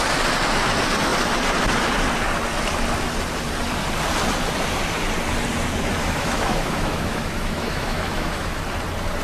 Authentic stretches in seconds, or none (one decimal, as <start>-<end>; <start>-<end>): 0.0-6.0; 8.5-9.2